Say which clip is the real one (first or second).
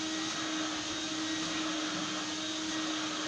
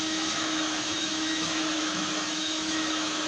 first